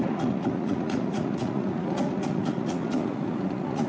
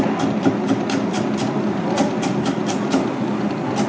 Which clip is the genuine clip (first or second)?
second